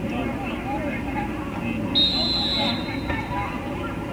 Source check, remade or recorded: recorded